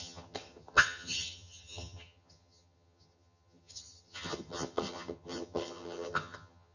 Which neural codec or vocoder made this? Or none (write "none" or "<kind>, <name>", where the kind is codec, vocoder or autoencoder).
vocoder, HiFi-GAN